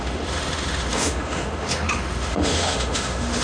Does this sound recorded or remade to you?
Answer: remade